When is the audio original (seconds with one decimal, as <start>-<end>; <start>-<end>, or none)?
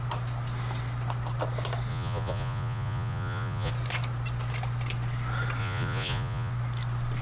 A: 0.0-1.9; 3.7-5.6; 6.5-7.2